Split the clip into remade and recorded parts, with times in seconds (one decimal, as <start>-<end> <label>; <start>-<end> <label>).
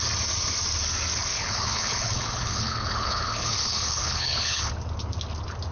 0.0-1.3 recorded; 1.3-4.7 remade; 4.7-5.7 recorded